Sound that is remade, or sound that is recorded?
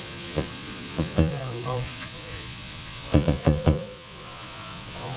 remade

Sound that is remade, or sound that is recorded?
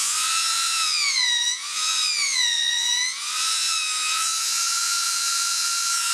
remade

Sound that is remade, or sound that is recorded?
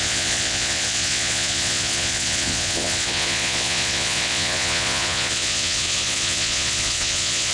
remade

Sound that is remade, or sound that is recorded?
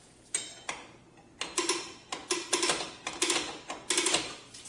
recorded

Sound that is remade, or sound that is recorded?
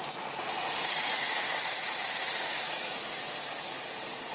remade